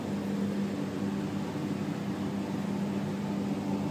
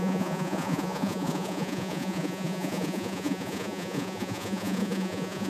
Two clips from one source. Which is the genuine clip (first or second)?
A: first